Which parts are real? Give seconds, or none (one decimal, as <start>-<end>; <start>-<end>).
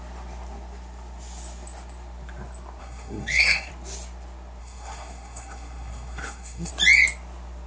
0.0-2.8; 3.7-4.6; 6.7-7.7